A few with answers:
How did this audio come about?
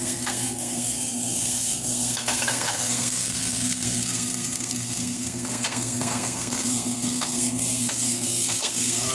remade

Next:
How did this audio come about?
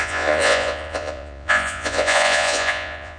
remade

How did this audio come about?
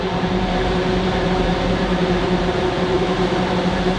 remade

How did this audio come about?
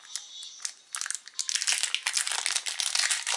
recorded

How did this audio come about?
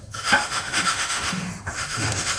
remade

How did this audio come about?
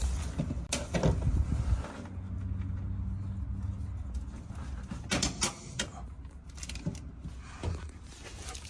recorded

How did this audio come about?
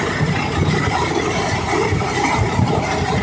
remade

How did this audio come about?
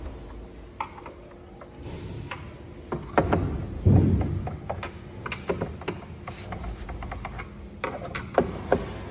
recorded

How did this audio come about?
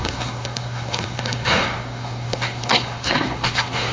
remade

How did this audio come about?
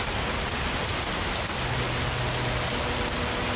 recorded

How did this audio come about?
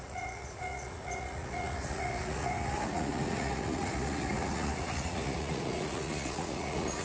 remade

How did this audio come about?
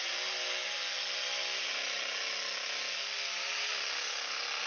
recorded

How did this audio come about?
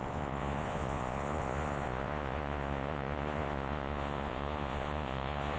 remade